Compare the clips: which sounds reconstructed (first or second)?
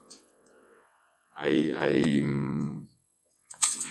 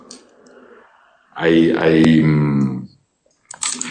first